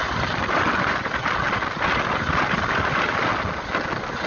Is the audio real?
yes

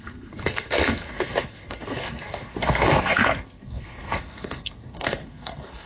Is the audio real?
no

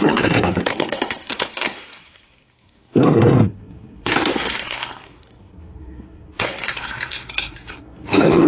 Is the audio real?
no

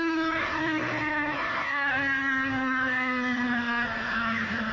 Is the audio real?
no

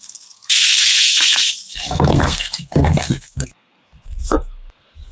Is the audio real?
no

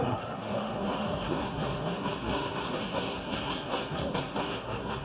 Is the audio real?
no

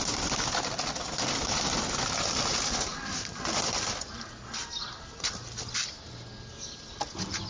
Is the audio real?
yes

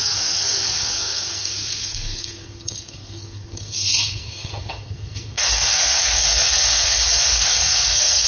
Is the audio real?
no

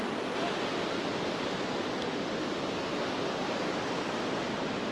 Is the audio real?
yes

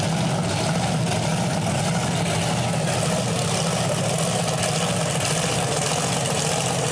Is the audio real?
yes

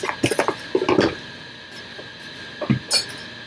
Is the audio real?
yes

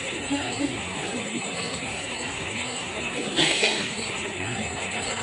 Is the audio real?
no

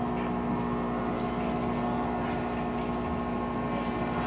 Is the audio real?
yes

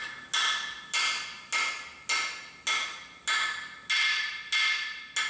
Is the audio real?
yes